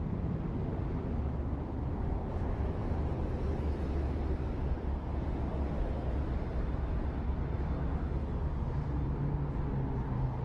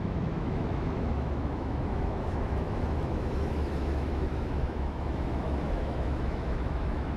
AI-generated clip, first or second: second